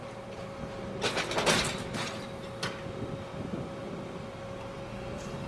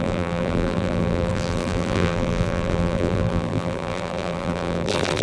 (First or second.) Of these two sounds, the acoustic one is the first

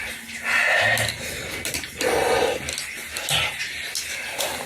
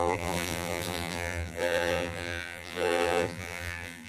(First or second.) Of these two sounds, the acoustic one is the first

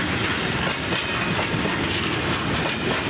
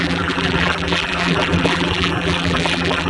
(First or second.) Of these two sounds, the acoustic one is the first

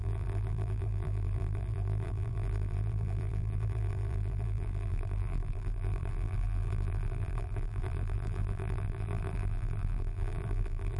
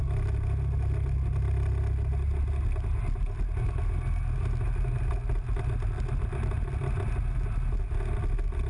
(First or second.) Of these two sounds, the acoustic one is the second